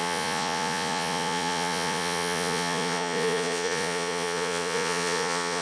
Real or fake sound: fake